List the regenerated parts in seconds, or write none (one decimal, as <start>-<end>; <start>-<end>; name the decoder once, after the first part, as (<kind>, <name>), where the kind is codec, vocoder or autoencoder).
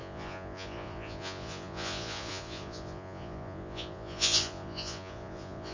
0.0-5.7 (vocoder, Vocos)